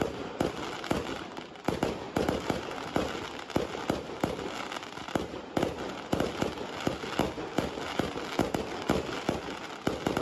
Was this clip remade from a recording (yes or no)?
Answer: no